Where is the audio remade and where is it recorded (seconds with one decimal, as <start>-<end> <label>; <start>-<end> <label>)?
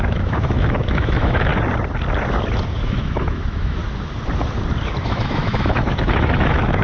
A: 0.0-1.5 remade; 1.5-2.8 recorded; 2.8-3.8 remade; 3.8-5.0 recorded; 5.0-6.8 remade